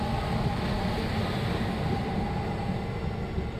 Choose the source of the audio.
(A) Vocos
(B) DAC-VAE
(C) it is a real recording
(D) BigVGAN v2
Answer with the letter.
C